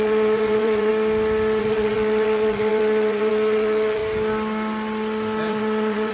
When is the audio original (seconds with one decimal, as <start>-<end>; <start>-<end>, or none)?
0.9-1.6; 4.0-5.5